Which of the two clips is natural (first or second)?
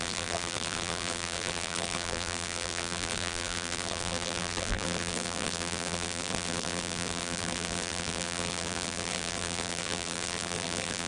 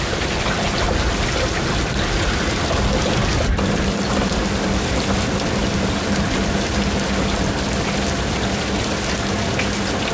second